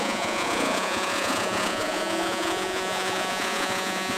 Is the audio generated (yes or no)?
yes